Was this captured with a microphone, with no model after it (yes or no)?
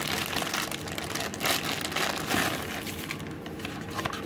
yes